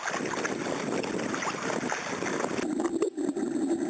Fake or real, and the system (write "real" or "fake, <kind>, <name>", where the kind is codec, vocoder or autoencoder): real